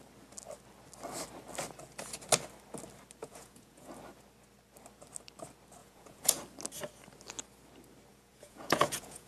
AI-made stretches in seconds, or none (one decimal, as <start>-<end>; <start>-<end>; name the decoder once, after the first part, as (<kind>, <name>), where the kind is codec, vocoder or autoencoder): 3.2-3.9 (vocoder, Vocos); 5.8-6.4; 8.1-9.3